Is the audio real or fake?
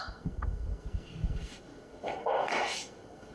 fake